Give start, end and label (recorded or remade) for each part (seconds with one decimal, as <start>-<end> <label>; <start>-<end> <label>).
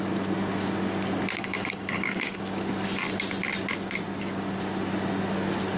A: 0.0-1.4 recorded; 1.4-2.4 remade; 2.4-5.8 recorded